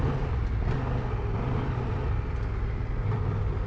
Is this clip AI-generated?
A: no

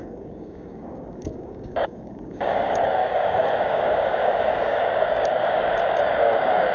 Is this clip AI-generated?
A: yes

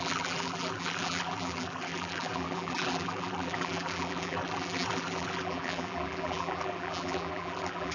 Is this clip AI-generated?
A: yes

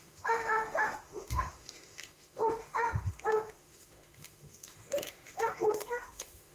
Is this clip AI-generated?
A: yes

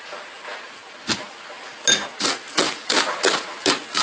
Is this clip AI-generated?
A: no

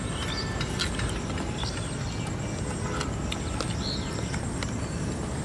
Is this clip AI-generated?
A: no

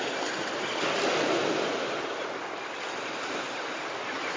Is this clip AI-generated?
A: no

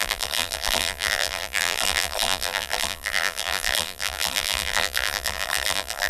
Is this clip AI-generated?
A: yes